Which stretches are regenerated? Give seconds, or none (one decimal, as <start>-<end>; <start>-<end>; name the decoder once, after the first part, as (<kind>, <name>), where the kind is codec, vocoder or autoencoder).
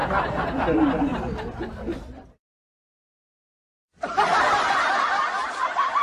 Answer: none